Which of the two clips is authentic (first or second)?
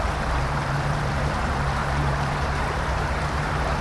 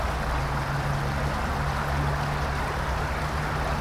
second